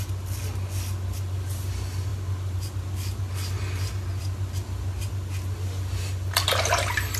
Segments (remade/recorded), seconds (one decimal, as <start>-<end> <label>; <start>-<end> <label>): 0.0-7.2 recorded